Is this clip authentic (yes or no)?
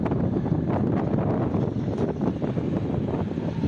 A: yes